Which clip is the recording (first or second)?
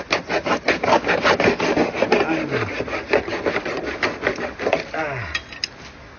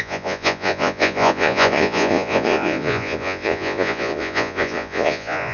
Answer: first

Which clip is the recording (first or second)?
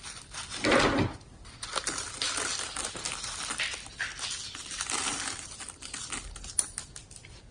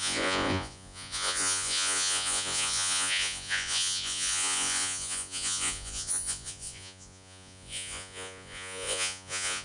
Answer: first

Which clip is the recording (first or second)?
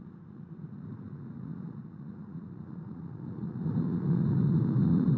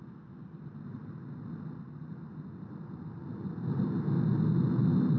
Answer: second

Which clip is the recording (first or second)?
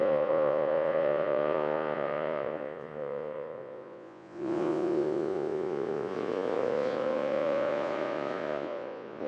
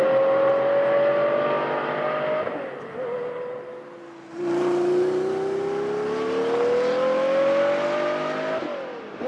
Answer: second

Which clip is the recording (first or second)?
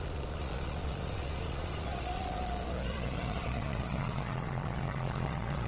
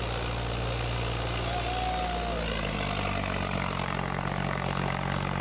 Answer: second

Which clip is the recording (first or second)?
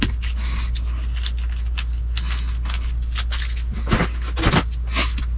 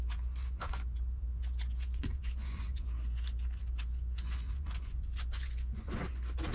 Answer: first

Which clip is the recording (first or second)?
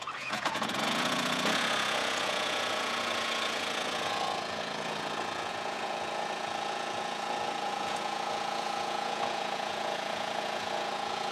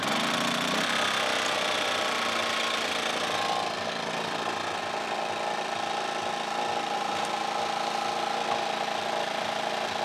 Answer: second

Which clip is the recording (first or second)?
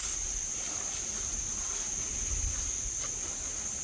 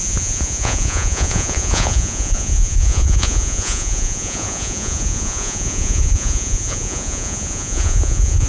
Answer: first